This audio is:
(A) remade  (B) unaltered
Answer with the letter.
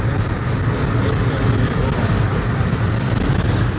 B